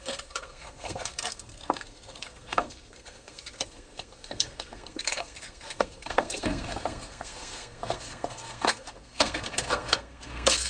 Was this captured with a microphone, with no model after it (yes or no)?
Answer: no